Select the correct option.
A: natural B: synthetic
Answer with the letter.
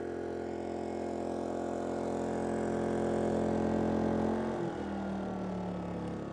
A